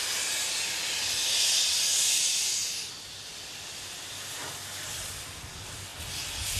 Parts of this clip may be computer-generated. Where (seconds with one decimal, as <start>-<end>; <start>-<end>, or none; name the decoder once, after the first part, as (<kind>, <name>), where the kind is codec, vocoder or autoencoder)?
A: none